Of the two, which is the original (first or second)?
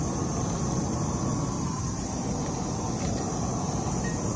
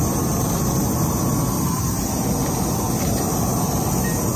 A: second